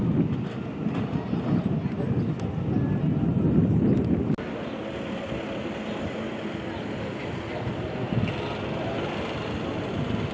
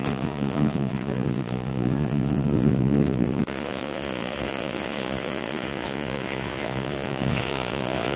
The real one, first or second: first